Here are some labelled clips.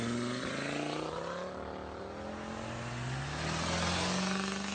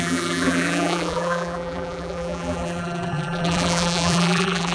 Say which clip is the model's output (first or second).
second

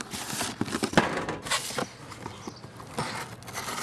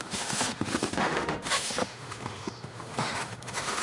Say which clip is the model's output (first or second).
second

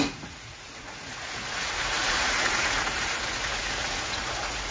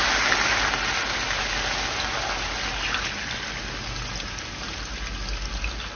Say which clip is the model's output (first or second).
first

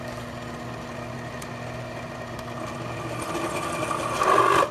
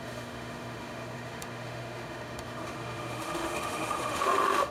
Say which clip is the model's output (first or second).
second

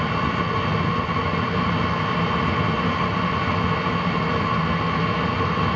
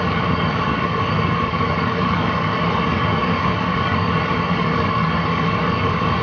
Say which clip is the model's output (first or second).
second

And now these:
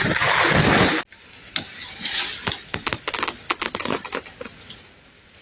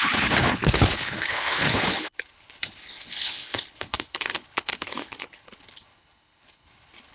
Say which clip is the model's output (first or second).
second